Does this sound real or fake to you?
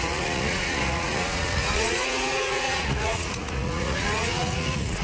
fake